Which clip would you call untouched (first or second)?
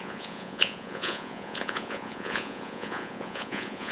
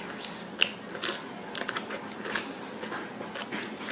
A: second